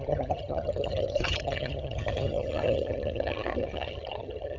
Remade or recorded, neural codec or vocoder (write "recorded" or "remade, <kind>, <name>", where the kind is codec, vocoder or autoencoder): remade, vocoder, HiFi-GAN